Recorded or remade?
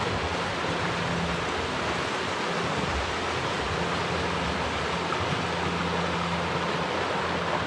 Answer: recorded